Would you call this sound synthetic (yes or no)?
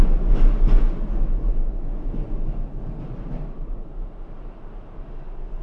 no